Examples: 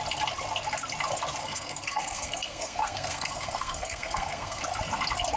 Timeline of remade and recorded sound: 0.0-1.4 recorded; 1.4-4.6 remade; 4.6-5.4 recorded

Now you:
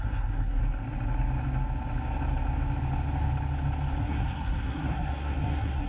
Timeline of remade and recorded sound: 0.0-0.6 remade; 0.6-4.0 recorded; 4.0-5.9 remade

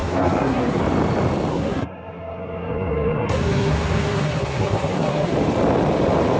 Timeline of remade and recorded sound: 0.0-0.8 remade; 0.8-1.5 recorded; 1.5-5.3 remade; 5.3-6.4 recorded